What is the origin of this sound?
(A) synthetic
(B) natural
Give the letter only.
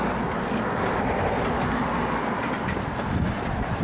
B